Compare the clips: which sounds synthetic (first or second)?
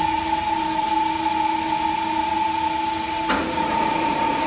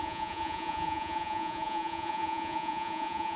second